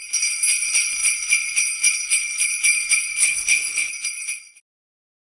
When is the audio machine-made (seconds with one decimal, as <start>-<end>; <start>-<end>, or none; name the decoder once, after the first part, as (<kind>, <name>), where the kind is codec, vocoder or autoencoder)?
3.2-3.9 (codec, HILCodec)